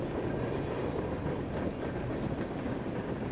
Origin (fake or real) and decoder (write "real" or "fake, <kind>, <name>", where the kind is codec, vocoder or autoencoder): real